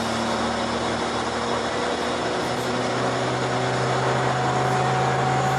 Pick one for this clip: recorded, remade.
recorded